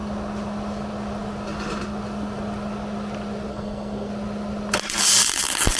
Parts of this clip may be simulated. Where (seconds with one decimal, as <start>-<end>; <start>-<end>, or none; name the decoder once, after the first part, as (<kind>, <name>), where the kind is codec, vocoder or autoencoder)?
3.5-4.1 (codec, SNAC)